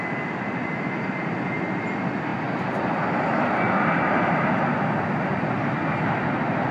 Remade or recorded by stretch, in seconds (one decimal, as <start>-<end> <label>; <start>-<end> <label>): 0.0-6.7 recorded